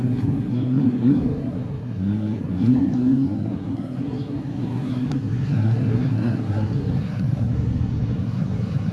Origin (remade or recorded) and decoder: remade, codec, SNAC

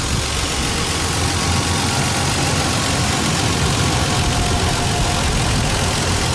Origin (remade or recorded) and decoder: recorded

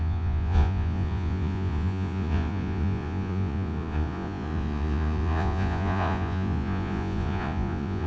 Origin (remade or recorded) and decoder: remade, vocoder, Vocos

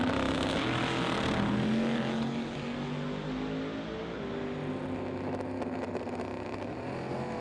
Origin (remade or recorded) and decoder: recorded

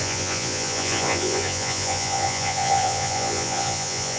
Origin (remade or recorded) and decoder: remade, vocoder, Vocos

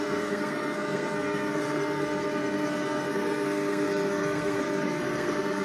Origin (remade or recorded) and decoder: remade, codec, SNAC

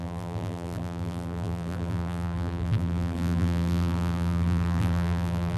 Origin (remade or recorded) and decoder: remade, vocoder, BigVGAN v2